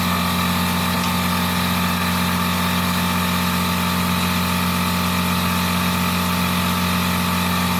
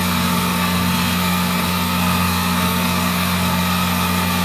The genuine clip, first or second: first